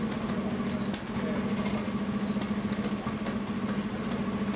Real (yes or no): yes